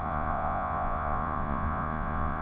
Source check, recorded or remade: remade